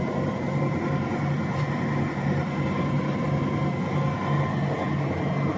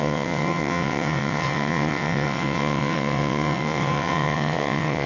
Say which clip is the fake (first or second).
second